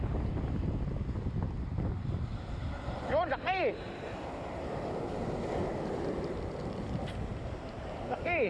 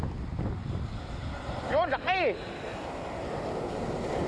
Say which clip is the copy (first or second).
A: first